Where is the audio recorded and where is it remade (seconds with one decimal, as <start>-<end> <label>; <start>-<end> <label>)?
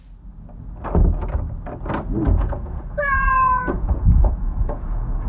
0.0-2.4 recorded; 2.4-5.3 remade